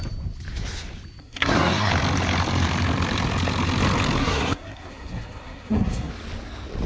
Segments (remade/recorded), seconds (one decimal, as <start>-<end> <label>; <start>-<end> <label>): 0.0-1.2 recorded; 1.2-1.9 remade; 1.9-4.2 recorded; 4.2-6.1 remade; 6.1-6.9 recorded